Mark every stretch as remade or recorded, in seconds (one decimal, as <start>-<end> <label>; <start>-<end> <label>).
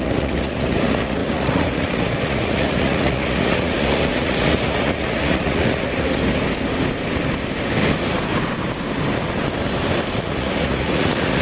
0.0-6.2 remade; 6.2-10.2 recorded; 10.2-11.4 remade